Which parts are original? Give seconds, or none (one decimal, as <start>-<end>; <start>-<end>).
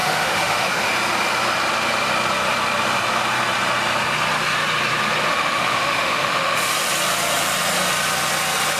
0.9-5.3; 6.7-8.8